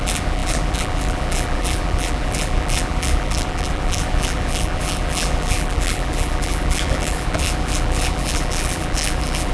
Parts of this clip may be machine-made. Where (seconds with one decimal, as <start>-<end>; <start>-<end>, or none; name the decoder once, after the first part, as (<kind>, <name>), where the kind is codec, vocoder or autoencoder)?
0.0-9.5 (vocoder, BigVGAN v2)